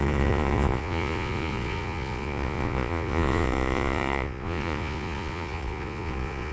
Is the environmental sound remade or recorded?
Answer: remade